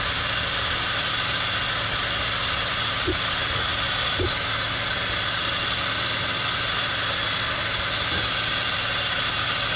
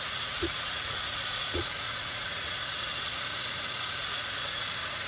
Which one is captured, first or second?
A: first